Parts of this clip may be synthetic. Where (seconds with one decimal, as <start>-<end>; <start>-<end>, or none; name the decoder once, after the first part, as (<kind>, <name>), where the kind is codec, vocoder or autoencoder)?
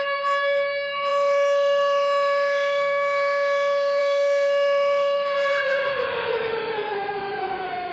0.0-7.9 (autoencoder, DAC-VAE)